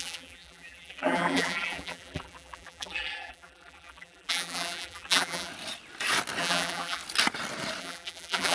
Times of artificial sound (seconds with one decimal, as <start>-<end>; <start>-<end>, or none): 0.0-5.5; 6.4-7.0; 7.8-8.5